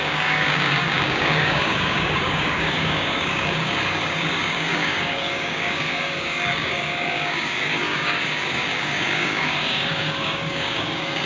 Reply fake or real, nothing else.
fake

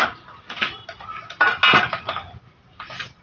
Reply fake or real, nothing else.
real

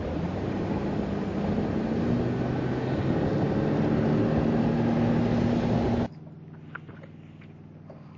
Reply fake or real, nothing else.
real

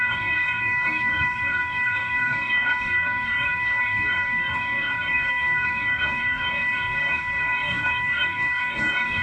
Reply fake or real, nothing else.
fake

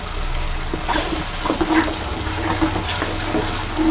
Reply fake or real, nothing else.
real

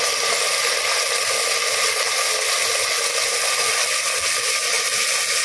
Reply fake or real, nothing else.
real